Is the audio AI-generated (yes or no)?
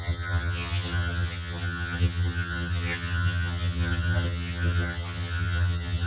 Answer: yes